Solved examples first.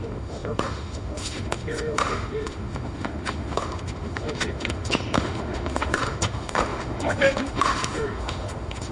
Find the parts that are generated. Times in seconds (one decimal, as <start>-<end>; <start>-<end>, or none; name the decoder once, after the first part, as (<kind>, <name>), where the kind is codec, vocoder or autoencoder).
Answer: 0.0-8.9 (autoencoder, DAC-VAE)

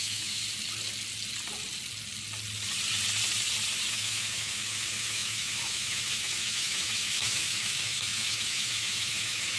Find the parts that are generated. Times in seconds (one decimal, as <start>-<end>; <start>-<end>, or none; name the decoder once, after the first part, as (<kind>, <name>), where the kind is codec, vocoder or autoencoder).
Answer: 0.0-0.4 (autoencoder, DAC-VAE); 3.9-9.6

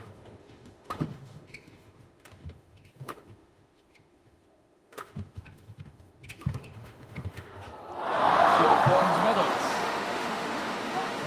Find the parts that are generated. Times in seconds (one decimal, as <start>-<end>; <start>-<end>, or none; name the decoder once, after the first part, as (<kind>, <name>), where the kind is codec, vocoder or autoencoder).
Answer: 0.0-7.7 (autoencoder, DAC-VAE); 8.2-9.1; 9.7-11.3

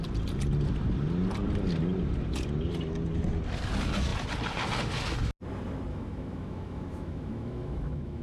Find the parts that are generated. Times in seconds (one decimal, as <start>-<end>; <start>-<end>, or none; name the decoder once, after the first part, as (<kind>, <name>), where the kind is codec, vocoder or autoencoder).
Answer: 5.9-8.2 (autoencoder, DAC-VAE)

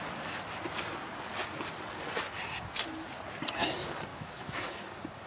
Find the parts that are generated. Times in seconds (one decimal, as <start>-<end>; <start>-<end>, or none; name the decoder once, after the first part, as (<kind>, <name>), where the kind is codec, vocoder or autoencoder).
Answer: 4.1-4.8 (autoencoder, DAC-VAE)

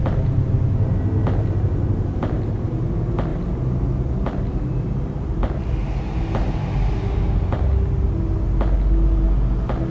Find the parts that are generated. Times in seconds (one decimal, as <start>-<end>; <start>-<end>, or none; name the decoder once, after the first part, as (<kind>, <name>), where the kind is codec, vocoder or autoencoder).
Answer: none

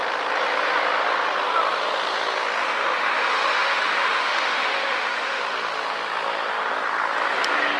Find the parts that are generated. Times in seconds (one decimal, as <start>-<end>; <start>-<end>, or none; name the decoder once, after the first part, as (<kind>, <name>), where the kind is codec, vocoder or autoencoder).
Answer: 2.6-5.4 (autoencoder, DAC-VAE)